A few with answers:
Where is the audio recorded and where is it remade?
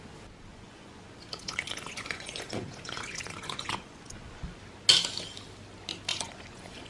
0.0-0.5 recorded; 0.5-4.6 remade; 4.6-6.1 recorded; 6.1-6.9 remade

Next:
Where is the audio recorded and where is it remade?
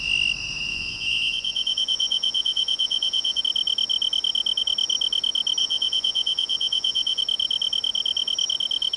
0.0-0.7 recorded; 0.7-3.4 remade; 3.4-5.6 recorded; 5.6-7.2 remade; 7.2-9.0 recorded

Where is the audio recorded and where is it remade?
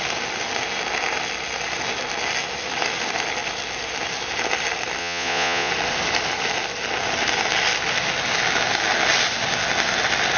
0.0-5.0 recorded; 5.0-5.7 remade; 5.7-10.4 recorded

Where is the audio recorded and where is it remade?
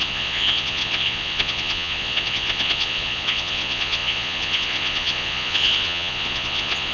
0.0-6.9 remade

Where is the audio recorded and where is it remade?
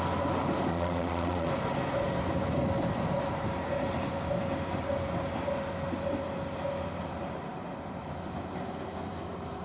0.0-0.7 recorded; 0.7-1.5 remade; 1.5-9.6 recorded